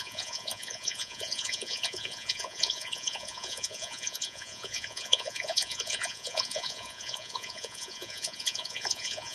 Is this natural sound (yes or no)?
no